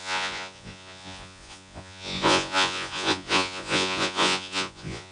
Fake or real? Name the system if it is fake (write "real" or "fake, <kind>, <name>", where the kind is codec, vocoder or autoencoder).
fake, vocoder, Vocos